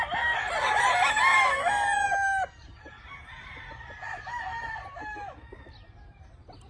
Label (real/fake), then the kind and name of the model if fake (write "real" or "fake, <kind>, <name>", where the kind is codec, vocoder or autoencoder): real